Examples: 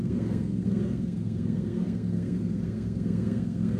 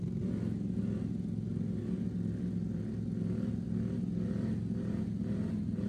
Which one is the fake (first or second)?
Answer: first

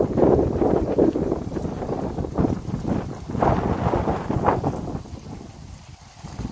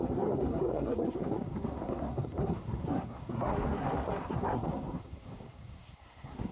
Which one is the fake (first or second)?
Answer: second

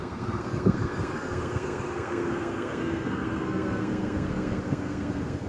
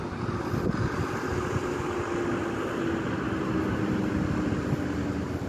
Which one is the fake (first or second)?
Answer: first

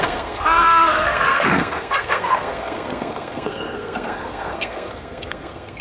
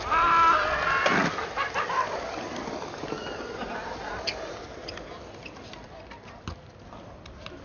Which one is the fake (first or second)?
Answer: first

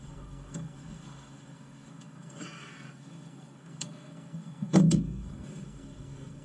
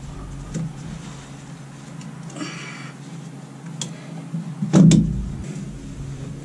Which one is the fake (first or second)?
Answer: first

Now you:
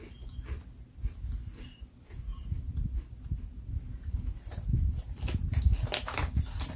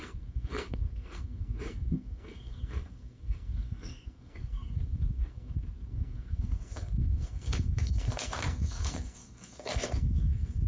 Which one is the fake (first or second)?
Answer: second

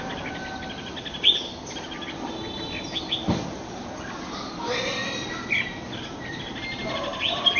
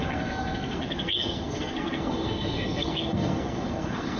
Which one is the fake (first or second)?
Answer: second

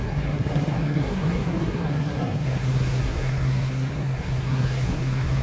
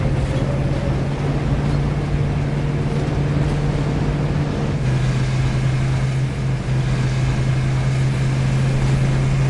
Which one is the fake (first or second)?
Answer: first